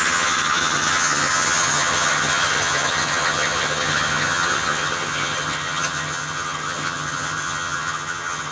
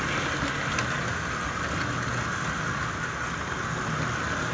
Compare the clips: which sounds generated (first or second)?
first